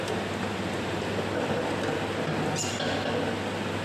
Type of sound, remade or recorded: recorded